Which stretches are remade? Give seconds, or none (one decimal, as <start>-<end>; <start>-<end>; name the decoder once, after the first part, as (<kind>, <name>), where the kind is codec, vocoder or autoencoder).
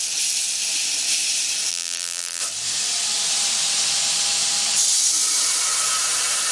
1.7-2.4 (vocoder, BigVGAN v2)